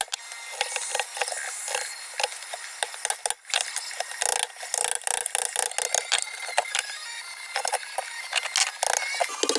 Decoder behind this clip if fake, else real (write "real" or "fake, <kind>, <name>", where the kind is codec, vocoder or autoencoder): real